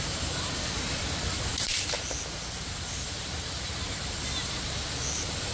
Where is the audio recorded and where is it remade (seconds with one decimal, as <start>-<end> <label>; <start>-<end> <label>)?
0.0-5.5 recorded